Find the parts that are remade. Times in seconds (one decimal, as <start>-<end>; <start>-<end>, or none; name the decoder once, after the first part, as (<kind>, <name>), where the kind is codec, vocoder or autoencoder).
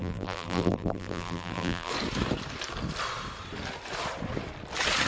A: 0.0-1.9 (vocoder, BigVGAN v2)